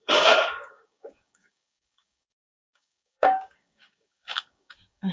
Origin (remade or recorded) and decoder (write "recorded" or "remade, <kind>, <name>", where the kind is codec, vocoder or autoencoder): remade, codec, DAC